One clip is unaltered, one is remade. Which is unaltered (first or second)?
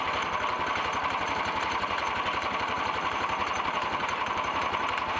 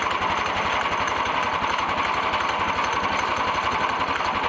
second